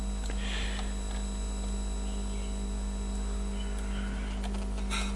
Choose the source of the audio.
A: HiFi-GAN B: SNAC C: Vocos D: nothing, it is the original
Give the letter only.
D